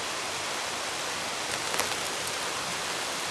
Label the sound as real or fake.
real